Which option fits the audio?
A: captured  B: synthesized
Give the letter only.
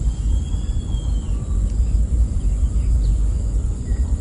B